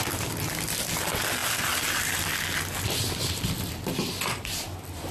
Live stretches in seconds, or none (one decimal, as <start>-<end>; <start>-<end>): 0.0-5.1